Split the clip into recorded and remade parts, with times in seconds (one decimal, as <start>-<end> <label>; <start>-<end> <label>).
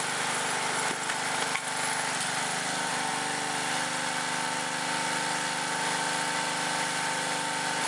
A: 0.0-7.9 recorded